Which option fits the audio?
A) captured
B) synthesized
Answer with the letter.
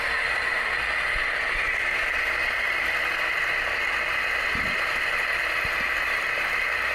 A